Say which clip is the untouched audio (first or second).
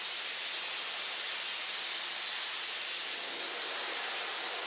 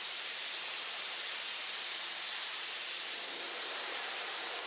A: first